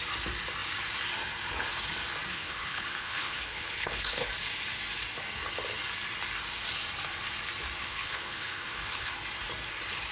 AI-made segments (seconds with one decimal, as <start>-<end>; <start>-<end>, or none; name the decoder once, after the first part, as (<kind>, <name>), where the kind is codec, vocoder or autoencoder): 2.3-4.3 (codec, HILCodec); 7.8-9.1